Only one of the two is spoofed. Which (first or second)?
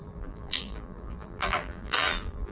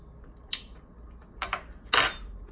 first